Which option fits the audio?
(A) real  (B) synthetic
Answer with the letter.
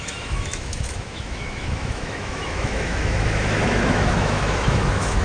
B